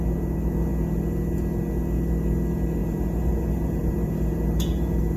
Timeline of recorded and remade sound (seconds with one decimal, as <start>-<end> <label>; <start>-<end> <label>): 0.0-2.8 recorded; 2.8-5.2 remade